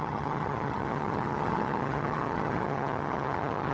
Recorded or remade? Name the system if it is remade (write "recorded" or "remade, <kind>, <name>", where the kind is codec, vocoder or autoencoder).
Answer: remade, vocoder, HiFi-GAN